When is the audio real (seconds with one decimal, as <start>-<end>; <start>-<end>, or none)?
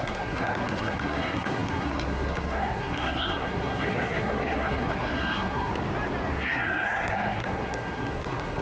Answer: 5.7-6.3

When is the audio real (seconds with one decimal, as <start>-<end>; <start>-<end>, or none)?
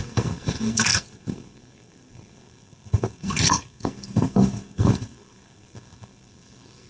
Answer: none